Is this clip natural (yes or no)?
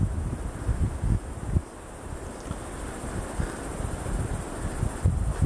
yes